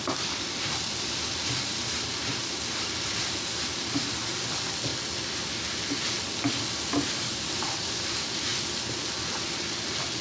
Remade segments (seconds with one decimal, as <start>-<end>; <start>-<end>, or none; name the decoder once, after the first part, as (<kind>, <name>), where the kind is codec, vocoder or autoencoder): 0.0-4.9 (vocoder, BigVGAN v2); 6.3-8.5; 9.2-10.2